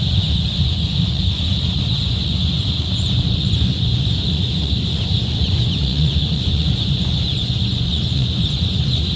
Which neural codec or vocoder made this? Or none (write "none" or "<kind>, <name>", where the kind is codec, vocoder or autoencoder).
vocoder, Vocos